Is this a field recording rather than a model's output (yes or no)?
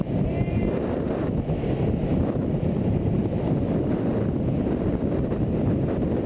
yes